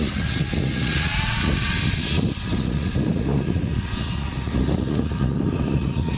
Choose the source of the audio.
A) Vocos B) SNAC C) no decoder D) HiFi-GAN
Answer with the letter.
A